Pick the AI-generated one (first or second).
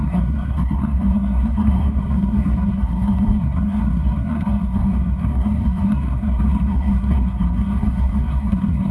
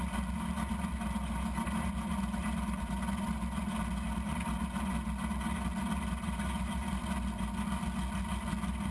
first